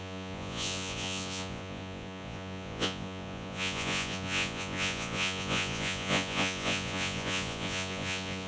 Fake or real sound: fake